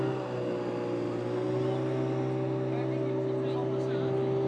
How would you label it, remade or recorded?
recorded